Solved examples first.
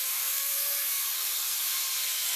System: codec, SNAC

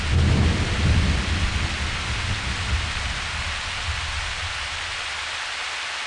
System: none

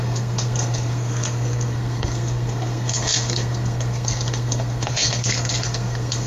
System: codec, SNAC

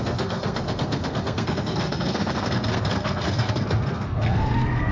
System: codec, SNAC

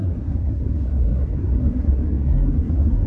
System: codec, SNAC